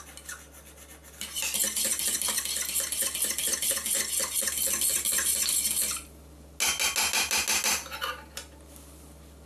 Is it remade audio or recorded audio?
recorded